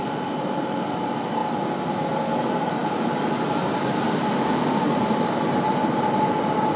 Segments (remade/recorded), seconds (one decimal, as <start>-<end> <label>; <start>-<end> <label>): 0.0-1.4 remade; 1.4-2.3 recorded; 2.3-6.8 remade